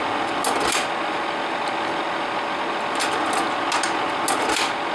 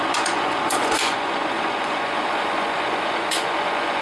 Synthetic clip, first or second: second